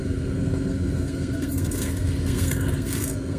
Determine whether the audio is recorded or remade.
remade